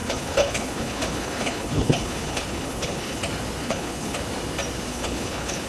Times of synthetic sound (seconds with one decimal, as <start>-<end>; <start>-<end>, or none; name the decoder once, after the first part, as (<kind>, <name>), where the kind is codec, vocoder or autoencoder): 0.0-3.2 (codec, HILCodec); 3.6-4.2; 4.9-5.7